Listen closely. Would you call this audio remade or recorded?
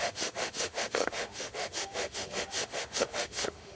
remade